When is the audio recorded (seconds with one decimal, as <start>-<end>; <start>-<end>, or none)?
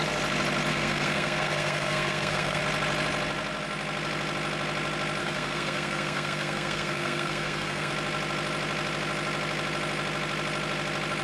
0.0-0.7; 2.6-5.2; 7.9-11.2